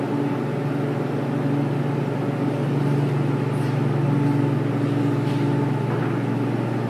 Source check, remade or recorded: recorded